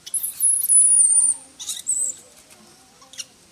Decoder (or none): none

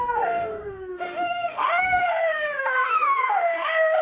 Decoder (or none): autoencoder, DAC-VAE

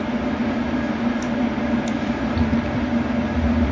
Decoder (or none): none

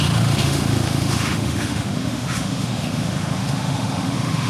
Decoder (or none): autoencoder, DAC-VAE